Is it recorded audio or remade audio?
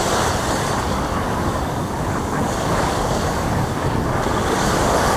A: remade